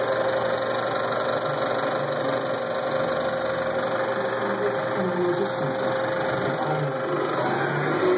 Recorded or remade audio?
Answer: recorded